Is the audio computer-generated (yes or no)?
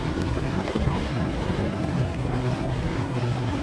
yes